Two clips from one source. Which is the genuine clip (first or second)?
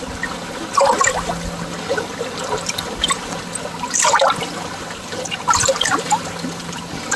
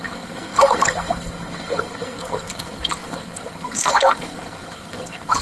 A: first